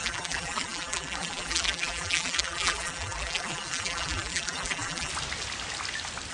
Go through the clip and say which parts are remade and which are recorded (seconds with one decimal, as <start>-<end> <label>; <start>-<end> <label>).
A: 0.0-5.1 remade; 5.1-6.3 recorded

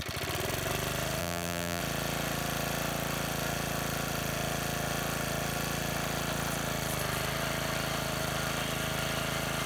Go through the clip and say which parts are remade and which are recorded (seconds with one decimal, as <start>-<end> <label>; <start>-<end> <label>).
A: 0.0-1.2 recorded; 1.2-1.8 remade; 1.8-9.7 recorded